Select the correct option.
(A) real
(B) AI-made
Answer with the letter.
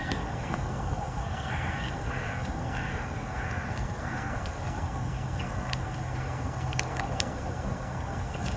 B